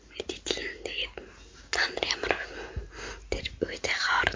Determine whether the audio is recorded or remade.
recorded